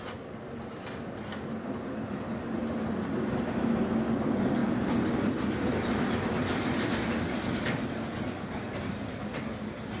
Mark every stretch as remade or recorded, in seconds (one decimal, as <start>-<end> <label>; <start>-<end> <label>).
0.0-10.0 recorded

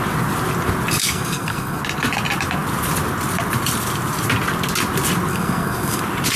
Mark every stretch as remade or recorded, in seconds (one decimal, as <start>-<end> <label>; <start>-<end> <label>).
0.0-1.0 recorded; 1.0-1.8 remade; 1.8-5.3 recorded; 5.3-6.0 remade; 6.0-6.4 recorded

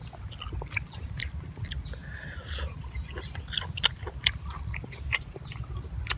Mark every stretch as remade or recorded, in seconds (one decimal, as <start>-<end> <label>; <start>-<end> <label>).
0.0-6.2 recorded

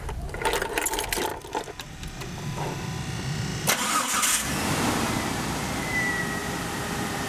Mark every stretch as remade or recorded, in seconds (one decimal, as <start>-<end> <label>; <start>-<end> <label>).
0.0-1.3 recorded; 1.3-2.0 remade; 2.0-3.5 recorded; 3.5-5.1 remade; 5.1-6.4 recorded; 6.4-7.3 remade

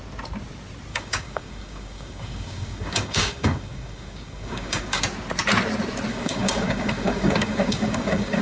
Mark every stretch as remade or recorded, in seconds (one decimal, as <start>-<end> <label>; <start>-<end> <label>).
0.0-0.9 recorded; 0.9-5.0 remade; 5.0-6.1 recorded; 6.1-8.4 remade